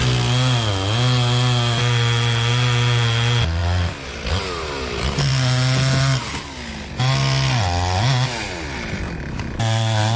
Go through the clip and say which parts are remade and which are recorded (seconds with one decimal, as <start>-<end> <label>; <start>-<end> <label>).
0.0-10.2 recorded